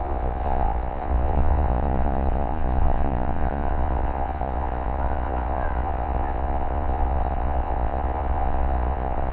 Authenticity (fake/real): fake